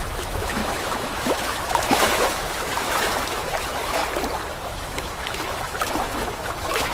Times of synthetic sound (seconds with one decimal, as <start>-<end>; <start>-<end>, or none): 0.0-4.0; 4.5-6.9